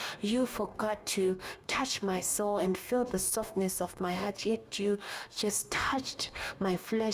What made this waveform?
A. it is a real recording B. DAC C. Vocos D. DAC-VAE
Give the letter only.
B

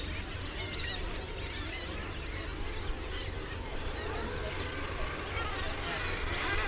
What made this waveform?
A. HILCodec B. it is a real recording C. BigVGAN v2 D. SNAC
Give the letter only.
B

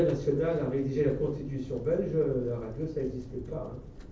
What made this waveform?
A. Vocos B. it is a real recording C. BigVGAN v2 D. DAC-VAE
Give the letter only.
B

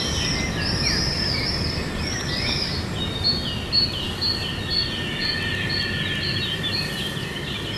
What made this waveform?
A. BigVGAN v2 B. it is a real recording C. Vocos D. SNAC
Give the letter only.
B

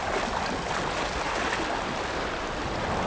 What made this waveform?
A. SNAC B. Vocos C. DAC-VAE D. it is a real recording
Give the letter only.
D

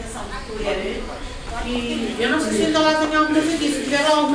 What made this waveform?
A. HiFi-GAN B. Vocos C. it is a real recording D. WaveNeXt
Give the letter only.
C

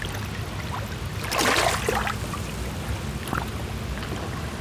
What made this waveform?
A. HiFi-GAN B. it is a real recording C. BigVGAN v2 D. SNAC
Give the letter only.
B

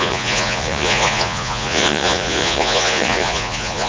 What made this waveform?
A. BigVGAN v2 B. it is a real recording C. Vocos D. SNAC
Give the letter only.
C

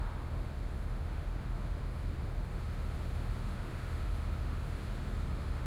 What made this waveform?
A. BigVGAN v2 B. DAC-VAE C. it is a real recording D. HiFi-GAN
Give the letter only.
B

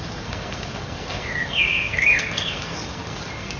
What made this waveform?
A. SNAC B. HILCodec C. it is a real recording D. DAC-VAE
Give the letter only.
A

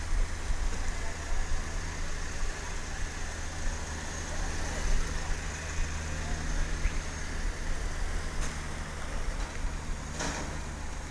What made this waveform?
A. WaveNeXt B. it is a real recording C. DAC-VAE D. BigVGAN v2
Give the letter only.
B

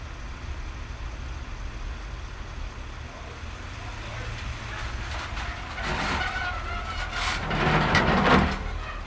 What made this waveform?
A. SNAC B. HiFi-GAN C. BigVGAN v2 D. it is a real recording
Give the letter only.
D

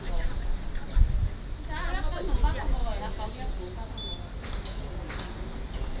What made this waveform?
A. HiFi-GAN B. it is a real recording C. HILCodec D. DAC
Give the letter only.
B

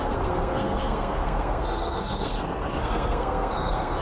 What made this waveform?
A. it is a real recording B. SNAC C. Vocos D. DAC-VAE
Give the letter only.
B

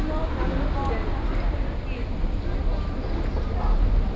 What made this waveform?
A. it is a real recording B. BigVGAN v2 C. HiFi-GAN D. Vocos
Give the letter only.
A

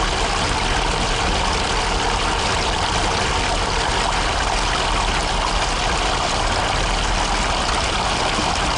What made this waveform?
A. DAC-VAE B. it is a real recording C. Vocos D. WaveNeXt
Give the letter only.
B